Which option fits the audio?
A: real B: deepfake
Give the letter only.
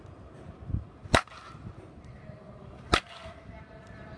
A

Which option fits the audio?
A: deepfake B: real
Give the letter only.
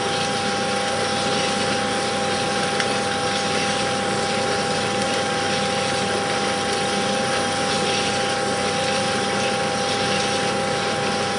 B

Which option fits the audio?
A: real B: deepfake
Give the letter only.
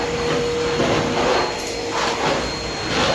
A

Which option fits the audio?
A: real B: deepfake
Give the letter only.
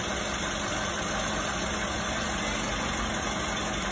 A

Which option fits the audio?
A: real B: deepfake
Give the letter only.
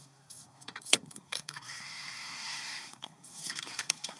B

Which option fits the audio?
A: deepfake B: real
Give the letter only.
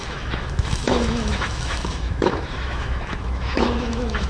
A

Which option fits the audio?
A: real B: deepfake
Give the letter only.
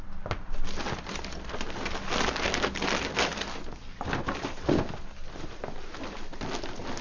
A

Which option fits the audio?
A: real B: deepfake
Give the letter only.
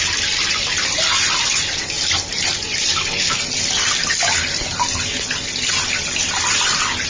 A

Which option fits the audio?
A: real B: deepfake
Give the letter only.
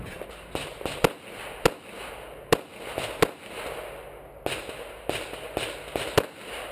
A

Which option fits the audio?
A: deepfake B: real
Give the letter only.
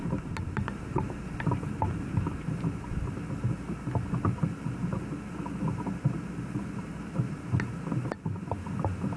B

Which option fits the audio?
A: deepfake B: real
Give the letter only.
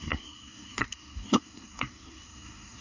A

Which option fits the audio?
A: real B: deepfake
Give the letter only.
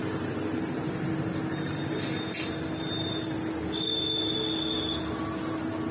A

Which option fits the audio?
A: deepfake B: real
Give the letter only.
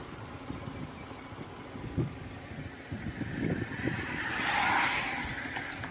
B